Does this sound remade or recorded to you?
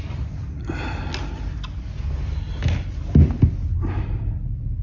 recorded